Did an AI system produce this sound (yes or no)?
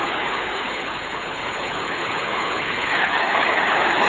yes